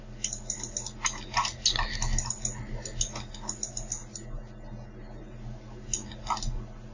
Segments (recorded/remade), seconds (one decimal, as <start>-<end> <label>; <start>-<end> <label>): 0.0-6.9 recorded